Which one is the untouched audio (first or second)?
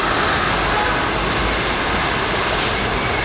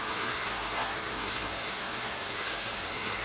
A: first